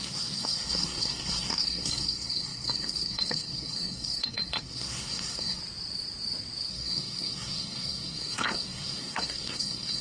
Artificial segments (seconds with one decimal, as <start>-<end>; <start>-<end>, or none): 0.0-5.6; 6.7-10.0